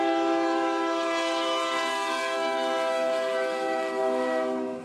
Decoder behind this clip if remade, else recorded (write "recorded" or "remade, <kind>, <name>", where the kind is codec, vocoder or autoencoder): remade, autoencoder, DAC-VAE